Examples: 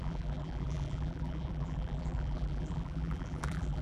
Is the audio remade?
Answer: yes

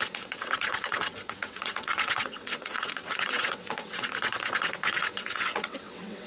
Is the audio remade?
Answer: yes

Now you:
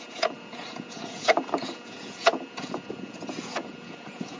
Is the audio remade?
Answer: yes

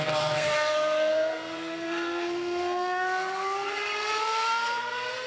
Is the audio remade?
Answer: yes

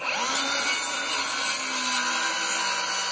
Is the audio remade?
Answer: no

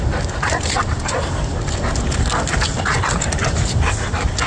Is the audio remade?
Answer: no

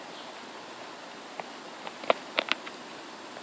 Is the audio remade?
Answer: yes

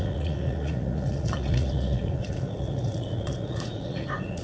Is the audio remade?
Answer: yes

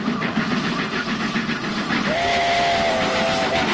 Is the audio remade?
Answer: no